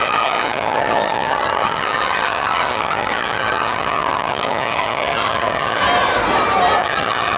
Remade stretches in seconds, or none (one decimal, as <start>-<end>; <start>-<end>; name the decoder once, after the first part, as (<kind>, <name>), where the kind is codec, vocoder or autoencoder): 0.0-5.8 (vocoder, HiFi-GAN); 6.8-7.4